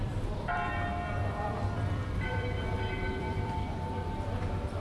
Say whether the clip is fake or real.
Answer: fake